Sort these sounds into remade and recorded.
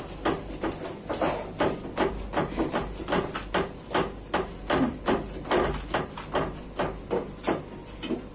recorded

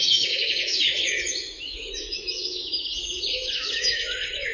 remade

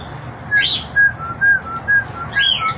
recorded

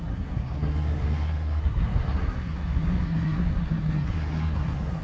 remade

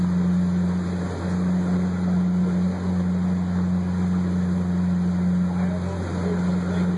recorded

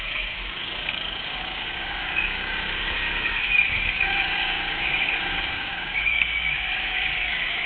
remade